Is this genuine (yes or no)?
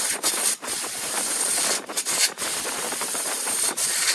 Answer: no